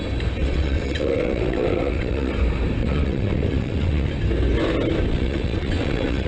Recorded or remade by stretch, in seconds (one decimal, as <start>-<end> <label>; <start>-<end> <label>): 0.0-0.4 recorded; 0.4-2.3 remade; 2.3-2.8 recorded; 2.8-4.1 remade; 4.1-5.1 recorded; 5.1-6.3 remade